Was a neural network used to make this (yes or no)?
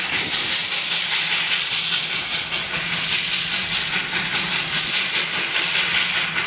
no